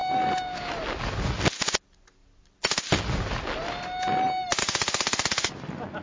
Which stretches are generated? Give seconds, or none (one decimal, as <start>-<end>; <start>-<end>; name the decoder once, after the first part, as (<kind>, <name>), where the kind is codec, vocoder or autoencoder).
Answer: 0.0-0.7 (codec, DAC)